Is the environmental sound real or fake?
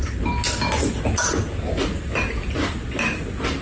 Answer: real